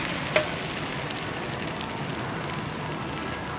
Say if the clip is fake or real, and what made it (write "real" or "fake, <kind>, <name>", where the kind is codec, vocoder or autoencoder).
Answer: real